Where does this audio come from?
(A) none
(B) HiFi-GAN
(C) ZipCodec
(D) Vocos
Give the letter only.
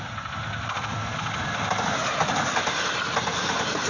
A